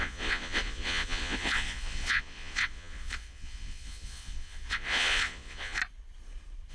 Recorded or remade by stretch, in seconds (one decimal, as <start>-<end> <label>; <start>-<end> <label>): 0.0-5.8 remade; 5.8-6.7 recorded